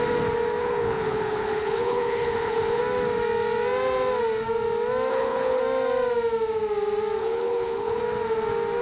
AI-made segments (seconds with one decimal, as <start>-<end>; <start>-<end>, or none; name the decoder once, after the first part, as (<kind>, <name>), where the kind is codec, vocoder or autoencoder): 0.6-2.8 (codec, HILCodec); 5.1-5.6; 7.2-8.0